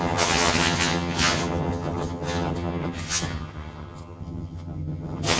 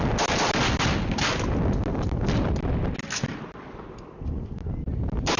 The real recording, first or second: second